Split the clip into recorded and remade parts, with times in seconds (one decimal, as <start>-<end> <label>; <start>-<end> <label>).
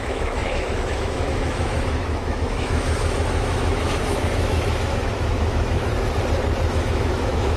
0.0-5.9 remade; 5.9-6.7 recorded; 6.7-7.6 remade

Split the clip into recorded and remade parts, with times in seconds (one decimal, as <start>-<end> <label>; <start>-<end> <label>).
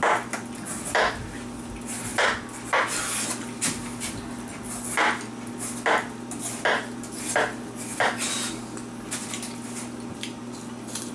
0.0-11.1 recorded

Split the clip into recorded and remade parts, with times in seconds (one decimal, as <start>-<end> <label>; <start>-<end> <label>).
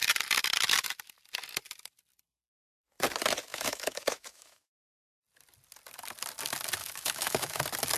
0.0-3.5 recorded; 3.5-5.0 remade; 5.0-6.8 recorded; 6.8-7.6 remade; 7.6-8.0 recorded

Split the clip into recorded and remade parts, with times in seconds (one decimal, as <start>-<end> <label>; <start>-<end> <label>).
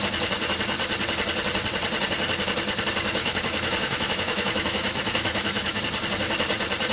0.0-3.2 recorded; 3.2-5.8 remade; 5.8-6.9 recorded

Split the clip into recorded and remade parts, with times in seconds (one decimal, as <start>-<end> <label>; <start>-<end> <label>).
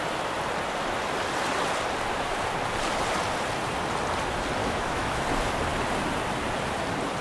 0.0-4.6 recorded; 4.6-5.2 remade; 5.2-7.2 recorded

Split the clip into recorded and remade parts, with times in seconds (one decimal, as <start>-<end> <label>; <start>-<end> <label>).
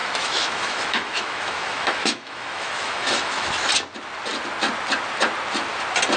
0.0-3.7 remade; 3.7-6.2 recorded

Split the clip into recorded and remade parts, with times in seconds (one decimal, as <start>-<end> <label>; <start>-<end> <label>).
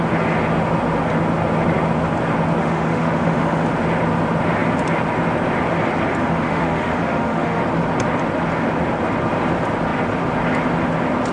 0.0-2.6 recorded; 2.6-3.6 remade; 3.6-6.2 recorded; 6.2-7.6 remade; 7.6-11.3 recorded